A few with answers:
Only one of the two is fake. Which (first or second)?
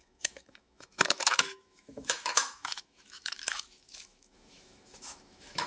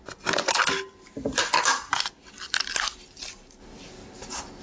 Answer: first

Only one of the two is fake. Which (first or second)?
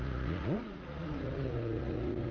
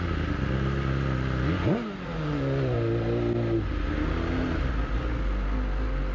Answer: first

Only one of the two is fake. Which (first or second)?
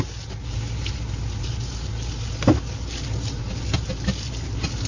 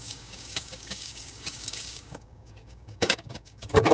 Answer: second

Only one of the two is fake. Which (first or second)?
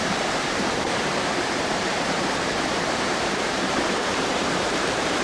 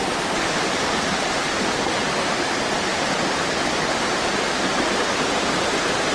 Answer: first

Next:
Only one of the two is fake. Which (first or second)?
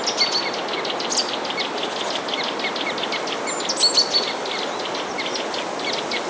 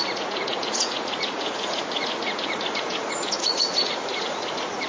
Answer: second